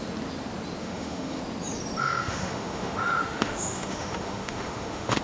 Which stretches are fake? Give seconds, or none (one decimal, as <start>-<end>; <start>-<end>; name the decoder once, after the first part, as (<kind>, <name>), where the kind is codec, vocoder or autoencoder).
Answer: 0.8-1.4 (autoencoder, DAC-VAE); 2.0-5.2